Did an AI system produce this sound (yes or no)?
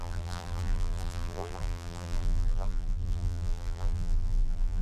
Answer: yes